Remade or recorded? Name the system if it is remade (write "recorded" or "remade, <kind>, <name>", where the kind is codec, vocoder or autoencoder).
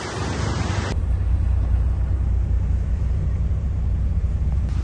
remade, vocoder, BigVGAN v2